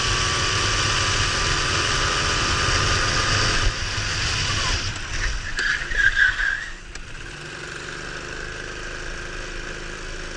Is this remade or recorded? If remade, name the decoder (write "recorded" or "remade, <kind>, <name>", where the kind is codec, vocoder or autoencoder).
recorded